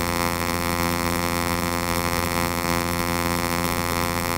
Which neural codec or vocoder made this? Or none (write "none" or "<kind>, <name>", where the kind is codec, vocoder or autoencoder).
vocoder, BigVGAN v2